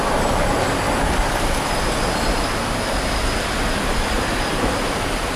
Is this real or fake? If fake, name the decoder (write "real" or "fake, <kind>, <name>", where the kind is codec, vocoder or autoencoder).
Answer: real